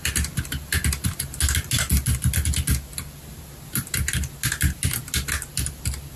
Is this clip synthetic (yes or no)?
no